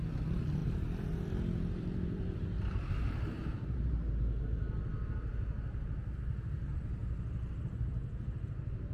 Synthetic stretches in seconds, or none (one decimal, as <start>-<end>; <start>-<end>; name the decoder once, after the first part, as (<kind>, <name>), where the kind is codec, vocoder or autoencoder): 0.6-4.1 (vocoder, BigVGAN v2)